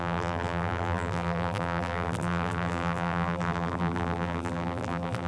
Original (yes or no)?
no